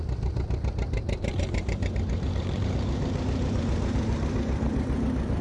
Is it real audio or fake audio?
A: fake